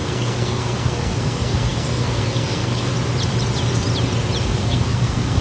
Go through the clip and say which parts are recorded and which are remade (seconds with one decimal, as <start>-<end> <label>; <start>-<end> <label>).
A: 0.0-2.9 remade; 2.9-4.4 recorded; 4.4-5.4 remade